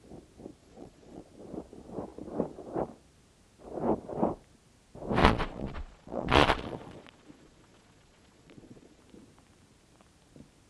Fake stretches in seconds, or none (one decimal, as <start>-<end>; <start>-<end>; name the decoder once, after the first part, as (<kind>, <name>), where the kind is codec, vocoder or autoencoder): 0.6-1.2 (vocoder, Vocos); 5.2-9.0